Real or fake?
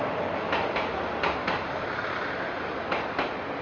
real